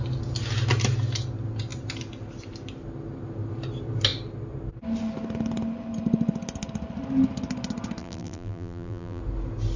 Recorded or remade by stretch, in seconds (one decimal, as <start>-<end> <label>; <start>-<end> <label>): 0.0-8.0 recorded; 8.0-9.2 remade; 9.2-9.8 recorded

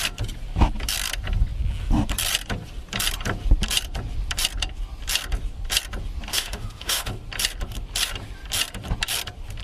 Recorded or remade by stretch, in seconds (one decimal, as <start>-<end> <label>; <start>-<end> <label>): 0.0-6.3 recorded; 6.3-7.1 remade; 7.1-9.6 recorded

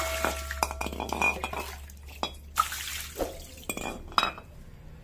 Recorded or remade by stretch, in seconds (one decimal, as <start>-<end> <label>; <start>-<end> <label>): 0.0-5.0 recorded

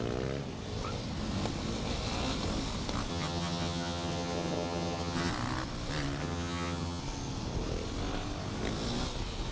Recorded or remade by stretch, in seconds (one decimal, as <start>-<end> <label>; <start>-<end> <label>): 0.0-3.1 recorded; 3.1-5.3 remade; 5.3-6.2 recorded; 6.2-7.0 remade; 7.0-9.5 recorded